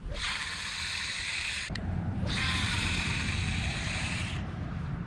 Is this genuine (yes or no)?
no